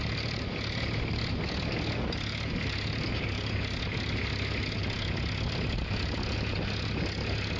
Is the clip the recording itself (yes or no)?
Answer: yes